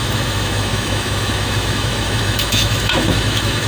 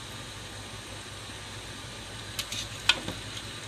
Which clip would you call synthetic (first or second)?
first